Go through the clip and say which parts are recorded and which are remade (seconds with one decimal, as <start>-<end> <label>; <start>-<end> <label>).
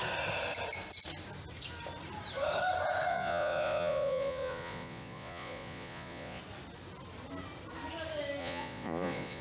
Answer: 0.0-3.1 recorded; 3.1-6.4 remade; 6.4-8.4 recorded; 8.4-9.4 remade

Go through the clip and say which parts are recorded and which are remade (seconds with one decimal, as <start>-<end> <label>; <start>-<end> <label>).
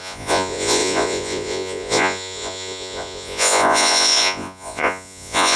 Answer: 0.0-5.6 remade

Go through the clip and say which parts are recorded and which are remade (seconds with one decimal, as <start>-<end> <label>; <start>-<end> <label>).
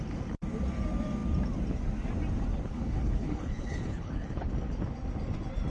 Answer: 0.0-2.7 recorded; 2.7-4.5 remade; 4.5-5.7 recorded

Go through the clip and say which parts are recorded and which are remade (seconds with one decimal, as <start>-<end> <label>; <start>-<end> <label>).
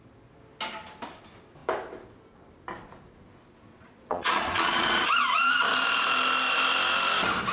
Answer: 0.0-3.7 recorded; 3.7-5.5 remade; 5.5-7.5 recorded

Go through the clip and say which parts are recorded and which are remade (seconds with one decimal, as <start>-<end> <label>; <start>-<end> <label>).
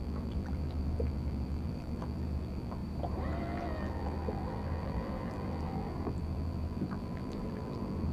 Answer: 0.0-2.8 remade; 2.8-3.4 recorded; 3.4-8.1 remade